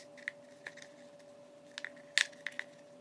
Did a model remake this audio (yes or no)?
no